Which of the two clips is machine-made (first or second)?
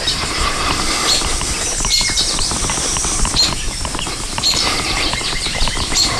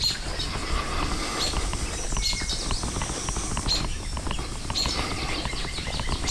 first